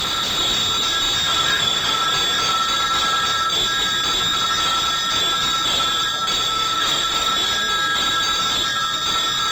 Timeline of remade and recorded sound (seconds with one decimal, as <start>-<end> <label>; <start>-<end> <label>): 0.0-1.4 recorded; 1.4-2.0 remade; 2.0-6.5 recorded; 6.5-7.3 remade; 7.3-9.5 recorded